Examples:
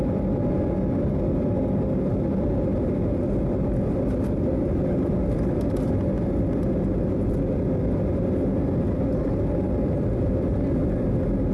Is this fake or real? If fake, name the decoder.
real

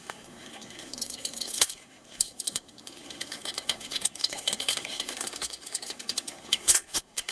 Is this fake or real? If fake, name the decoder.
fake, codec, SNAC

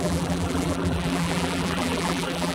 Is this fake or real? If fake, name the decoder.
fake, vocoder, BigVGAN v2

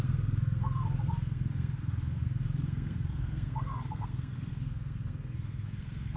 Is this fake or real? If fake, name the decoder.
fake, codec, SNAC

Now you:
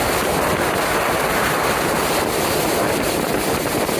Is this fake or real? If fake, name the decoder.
real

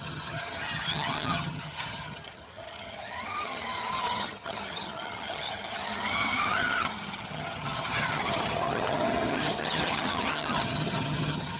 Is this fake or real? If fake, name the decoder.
fake, vocoder, HiFi-GAN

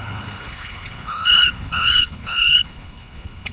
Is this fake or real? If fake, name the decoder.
fake, codec, HILCodec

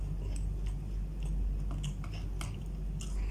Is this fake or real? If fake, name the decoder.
real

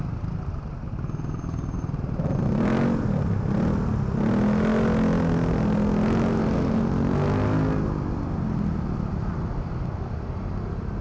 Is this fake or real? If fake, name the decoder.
real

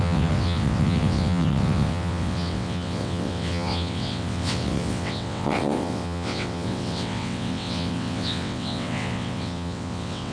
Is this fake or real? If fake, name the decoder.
fake, vocoder, WaveNeXt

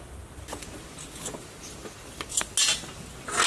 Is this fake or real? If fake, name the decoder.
real